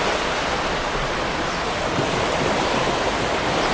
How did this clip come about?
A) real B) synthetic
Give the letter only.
A